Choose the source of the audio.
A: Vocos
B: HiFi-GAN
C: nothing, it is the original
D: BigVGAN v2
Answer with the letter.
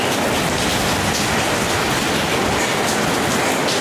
C